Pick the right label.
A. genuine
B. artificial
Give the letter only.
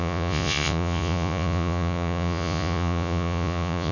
B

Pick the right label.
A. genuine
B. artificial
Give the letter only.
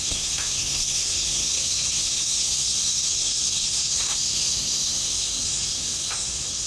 B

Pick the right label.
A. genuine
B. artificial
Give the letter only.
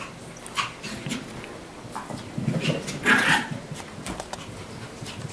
A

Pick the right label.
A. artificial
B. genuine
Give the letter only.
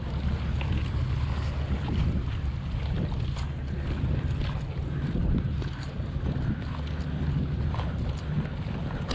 B